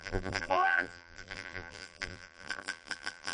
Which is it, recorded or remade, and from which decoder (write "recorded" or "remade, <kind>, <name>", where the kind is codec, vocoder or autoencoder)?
remade, vocoder, BigVGAN v2